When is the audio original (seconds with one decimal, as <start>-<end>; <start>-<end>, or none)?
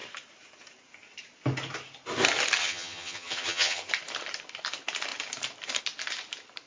0.0-2.6; 3.9-6.7